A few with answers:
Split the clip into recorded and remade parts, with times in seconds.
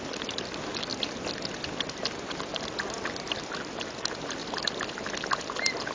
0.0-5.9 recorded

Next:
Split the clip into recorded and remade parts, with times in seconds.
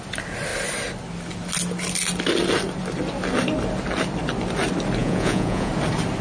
0.0-5.0 recorded; 5.0-5.7 remade; 5.7-6.2 recorded